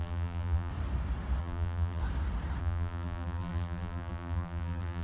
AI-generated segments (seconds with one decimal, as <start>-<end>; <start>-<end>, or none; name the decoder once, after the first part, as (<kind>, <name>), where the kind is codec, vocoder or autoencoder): 0.0-0.7 (vocoder, BigVGAN v2); 1.4-2.0; 2.6-5.0